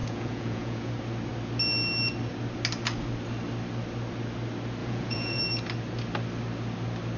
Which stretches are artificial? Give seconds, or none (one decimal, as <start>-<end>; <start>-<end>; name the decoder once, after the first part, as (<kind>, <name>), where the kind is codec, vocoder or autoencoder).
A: 0.0-0.9 (vocoder, Vocos); 4.8-5.4

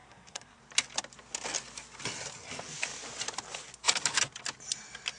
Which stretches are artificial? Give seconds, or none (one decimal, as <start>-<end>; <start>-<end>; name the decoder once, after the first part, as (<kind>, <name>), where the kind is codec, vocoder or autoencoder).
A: 0.0-0.6 (codec, SNAC)

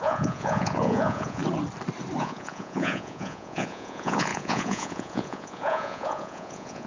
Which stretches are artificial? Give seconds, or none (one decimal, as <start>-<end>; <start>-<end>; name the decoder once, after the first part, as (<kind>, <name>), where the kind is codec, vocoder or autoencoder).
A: 0.0-1.4 (vocoder, Vocos); 2.2-6.9

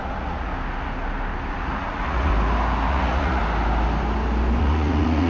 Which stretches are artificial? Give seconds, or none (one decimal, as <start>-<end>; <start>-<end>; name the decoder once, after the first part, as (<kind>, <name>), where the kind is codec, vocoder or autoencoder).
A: 0.0-0.5 (vocoder, Vocos); 1.5-2.3; 2.9-3.4; 4.6-5.3

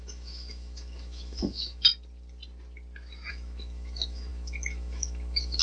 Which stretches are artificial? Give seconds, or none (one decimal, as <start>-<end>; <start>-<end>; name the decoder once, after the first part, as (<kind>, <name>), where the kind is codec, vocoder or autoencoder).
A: 0.0-1.9 (autoencoder, DAC-VAE); 3.3-5.6